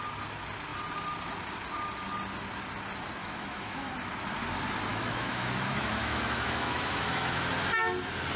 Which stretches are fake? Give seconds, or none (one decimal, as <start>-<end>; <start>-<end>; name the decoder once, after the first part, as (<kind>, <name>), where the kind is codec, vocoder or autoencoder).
3.2-3.9 (autoencoder, DAC-VAE); 4.9-7.5